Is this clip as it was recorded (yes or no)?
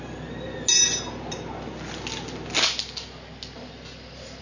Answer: yes